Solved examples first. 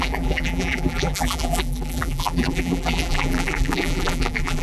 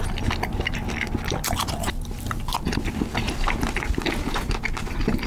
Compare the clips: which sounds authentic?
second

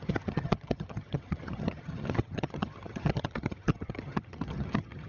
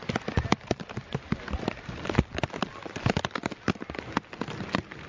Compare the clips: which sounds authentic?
second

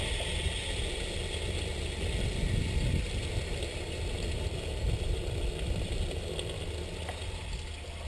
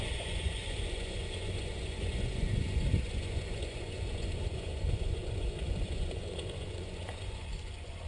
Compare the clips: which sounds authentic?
first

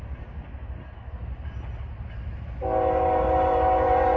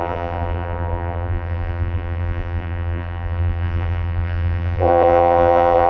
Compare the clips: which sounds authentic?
first